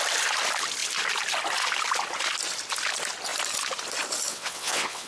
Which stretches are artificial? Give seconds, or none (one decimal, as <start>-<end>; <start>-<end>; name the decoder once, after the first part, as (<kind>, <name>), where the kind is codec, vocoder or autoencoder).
4.3-5.1 (vocoder, WaveNeXt)